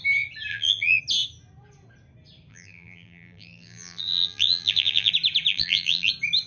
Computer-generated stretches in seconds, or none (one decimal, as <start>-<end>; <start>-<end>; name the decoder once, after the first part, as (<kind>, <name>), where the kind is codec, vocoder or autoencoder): 0.5-1.0 (vocoder, BigVGAN v2); 2.5-5.1; 5.5-6.1